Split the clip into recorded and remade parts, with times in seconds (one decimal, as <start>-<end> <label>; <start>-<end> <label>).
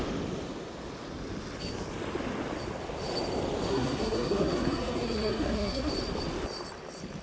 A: 0.0-3.7 recorded; 3.7-5.9 remade; 5.9-7.2 recorded